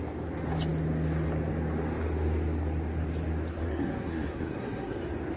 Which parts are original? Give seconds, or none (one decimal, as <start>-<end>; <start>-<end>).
0.0-3.5; 5.0-5.4